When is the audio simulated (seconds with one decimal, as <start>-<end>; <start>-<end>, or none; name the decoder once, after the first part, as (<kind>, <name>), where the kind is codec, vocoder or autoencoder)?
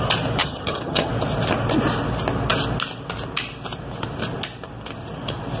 0.4-1.1 (vocoder, HiFi-GAN)